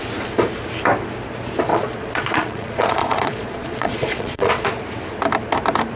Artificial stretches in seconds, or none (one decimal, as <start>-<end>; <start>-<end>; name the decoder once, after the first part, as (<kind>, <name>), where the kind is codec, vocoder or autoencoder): 1.7-4.8 (vocoder, Vocos)